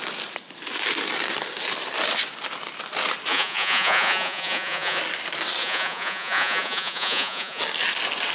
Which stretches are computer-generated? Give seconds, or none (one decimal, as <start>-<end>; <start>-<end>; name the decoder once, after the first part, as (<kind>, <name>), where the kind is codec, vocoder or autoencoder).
3.3-5.0 (vocoder, Vocos); 5.6-7.6